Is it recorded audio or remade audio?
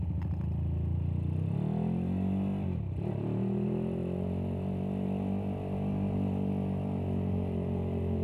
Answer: recorded